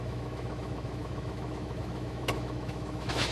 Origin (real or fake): fake